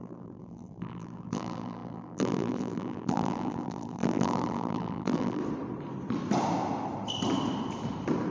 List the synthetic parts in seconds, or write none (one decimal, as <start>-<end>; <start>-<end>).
0.0-5.4